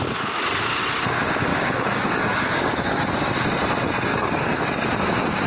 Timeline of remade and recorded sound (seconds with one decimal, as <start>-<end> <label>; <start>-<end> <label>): 0.0-1.5 recorded; 1.5-3.1 remade; 3.1-4.1 recorded; 4.1-4.6 remade; 4.6-5.5 recorded